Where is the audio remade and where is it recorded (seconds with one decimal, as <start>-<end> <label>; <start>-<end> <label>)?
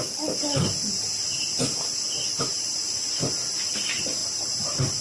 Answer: 0.0-5.0 recorded